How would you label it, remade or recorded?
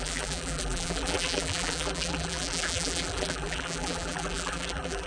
remade